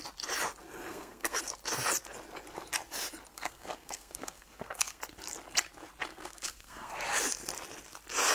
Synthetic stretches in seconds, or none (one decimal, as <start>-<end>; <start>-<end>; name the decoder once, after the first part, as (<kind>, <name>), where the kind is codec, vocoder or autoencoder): 0.9-1.4 (codec, SNAC); 3.3-5.0; 6.1-6.9